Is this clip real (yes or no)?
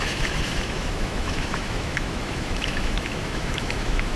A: no